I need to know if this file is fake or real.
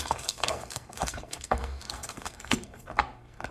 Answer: fake